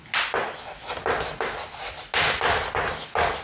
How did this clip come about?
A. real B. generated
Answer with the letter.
A